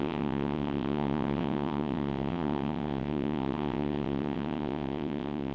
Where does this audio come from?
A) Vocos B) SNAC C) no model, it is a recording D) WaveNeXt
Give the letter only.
D